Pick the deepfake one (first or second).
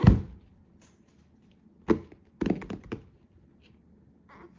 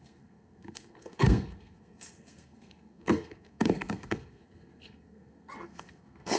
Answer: second